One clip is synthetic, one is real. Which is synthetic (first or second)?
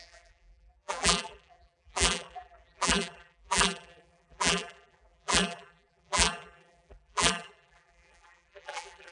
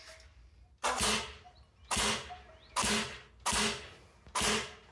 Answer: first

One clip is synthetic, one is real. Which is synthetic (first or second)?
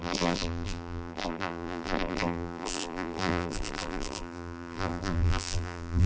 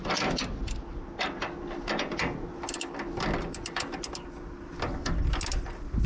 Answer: first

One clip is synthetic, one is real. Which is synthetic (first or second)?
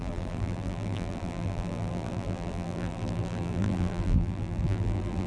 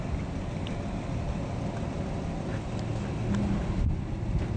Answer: first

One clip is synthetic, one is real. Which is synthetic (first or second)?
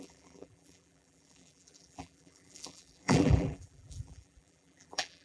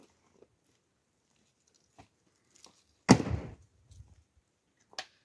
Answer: first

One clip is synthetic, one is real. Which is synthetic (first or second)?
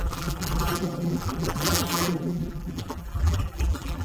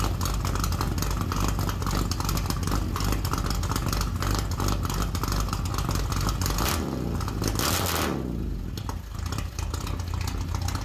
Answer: first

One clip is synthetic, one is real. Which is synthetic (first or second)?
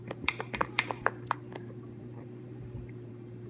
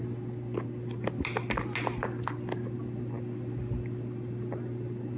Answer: first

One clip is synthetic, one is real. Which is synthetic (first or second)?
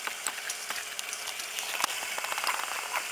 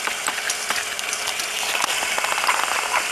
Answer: first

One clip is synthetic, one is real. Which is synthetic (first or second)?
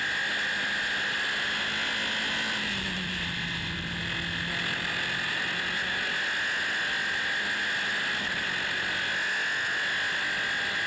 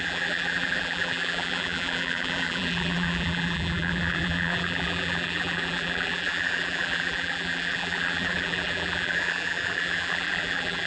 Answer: second